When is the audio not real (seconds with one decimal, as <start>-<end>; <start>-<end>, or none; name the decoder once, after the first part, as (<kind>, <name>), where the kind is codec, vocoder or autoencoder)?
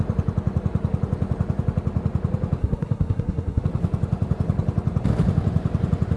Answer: 2.6-3.6 (codec, SNAC)